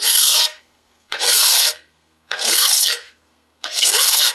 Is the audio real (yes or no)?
no